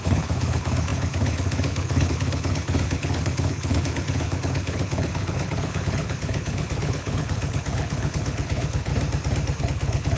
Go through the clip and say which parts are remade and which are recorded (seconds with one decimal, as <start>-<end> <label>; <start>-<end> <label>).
0.0-8.9 remade; 8.9-9.6 recorded; 9.6-10.2 remade